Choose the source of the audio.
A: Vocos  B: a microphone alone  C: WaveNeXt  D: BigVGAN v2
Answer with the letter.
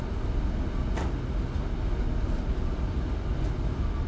B